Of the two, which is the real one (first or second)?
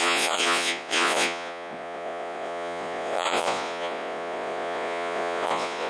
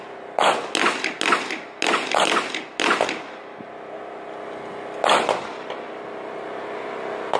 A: second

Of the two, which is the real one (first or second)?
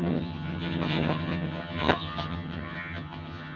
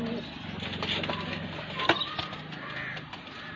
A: second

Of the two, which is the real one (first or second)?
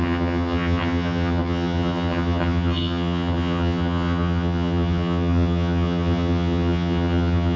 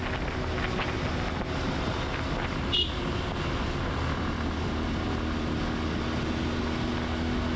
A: second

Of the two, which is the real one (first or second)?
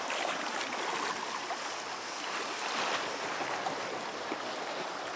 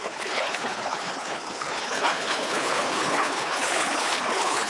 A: first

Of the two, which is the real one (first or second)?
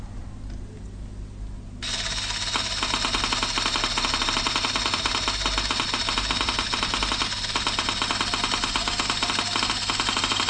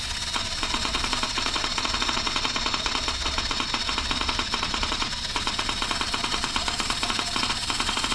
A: first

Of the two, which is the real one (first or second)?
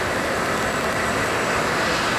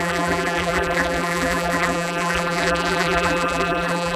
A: first